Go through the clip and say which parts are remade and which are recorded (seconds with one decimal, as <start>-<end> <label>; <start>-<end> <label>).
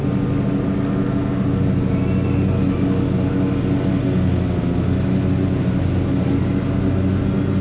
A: 0.0-7.6 recorded